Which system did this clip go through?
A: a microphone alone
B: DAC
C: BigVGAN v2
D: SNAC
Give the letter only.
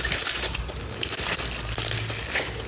A